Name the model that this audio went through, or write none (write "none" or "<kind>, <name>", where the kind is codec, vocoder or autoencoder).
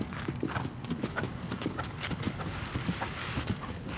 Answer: codec, DAC